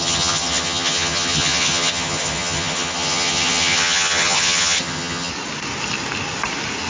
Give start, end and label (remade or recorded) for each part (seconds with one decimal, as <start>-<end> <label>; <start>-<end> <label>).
0.0-5.3 remade; 5.3-6.9 recorded